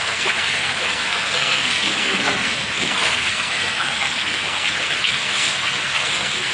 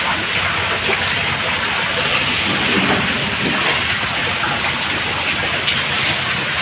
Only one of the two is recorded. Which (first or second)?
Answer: second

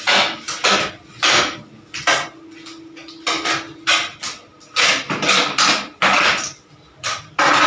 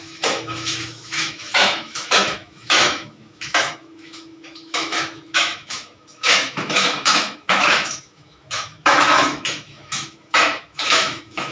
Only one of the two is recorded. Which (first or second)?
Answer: first